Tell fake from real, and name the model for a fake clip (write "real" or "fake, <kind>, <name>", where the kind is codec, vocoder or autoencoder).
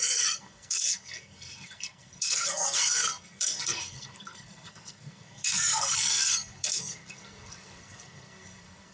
fake, codec, SNAC